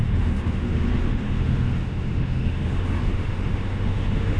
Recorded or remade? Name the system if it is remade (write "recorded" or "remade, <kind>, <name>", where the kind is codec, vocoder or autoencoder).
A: remade, autoencoder, DAC-VAE